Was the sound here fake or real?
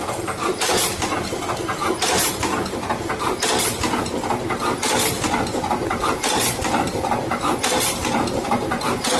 real